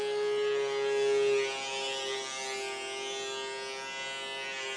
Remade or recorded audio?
recorded